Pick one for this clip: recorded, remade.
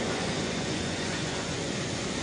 remade